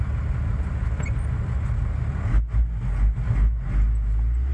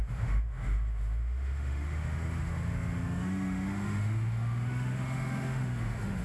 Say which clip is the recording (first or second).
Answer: first